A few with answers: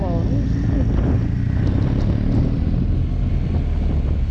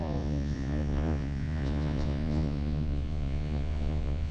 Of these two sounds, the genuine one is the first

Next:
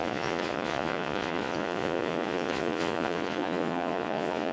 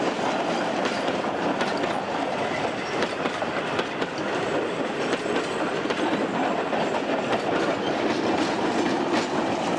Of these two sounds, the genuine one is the second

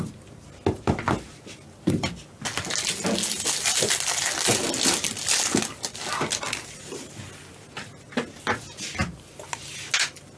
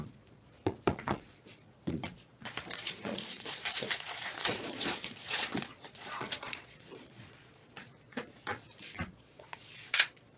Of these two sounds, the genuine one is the first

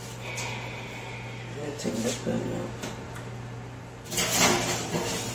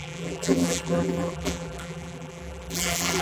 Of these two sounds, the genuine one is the first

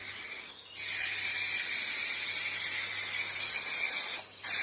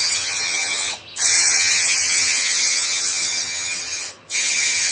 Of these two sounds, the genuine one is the first